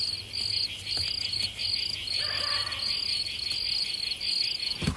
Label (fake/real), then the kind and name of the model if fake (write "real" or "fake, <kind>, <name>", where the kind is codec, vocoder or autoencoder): real